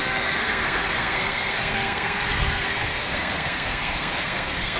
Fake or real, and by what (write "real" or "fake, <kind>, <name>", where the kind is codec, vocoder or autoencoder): fake, codec, SNAC